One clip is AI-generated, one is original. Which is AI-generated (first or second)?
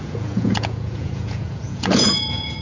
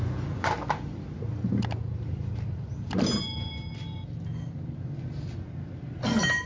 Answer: first